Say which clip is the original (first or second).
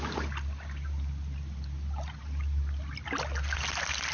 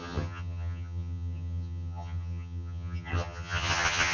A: first